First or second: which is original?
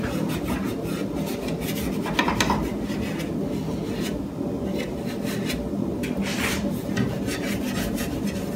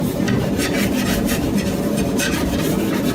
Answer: first